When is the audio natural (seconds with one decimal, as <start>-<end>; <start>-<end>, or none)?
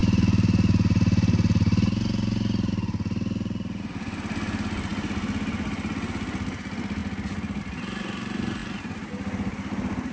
0.0-10.1